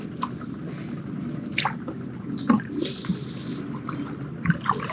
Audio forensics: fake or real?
real